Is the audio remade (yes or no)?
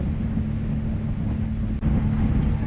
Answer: no